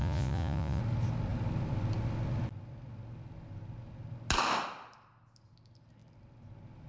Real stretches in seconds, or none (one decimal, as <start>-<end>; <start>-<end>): 0.8-6.9